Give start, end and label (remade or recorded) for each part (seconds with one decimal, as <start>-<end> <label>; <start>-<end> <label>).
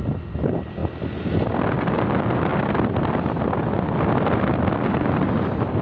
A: 0.0-5.8 recorded